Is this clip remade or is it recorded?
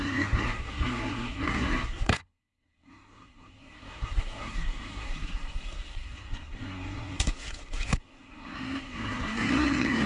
remade